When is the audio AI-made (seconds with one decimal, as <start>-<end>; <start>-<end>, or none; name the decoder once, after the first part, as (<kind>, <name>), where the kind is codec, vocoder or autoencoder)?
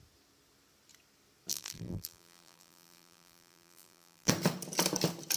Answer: 1.5-4.3 (vocoder, BigVGAN v2)